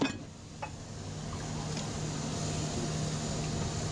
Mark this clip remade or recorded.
recorded